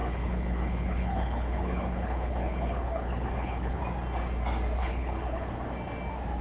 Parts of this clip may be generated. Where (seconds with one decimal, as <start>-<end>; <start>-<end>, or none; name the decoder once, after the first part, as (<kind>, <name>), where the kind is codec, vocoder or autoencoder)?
0.0-3.8 (codec, HILCodec); 4.8-5.5